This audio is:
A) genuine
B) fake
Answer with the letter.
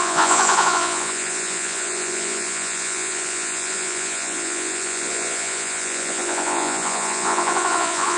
B